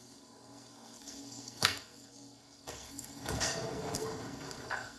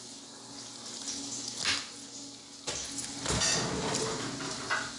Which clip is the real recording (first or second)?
second